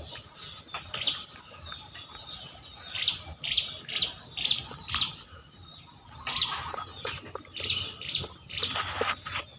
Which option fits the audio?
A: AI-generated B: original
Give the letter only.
B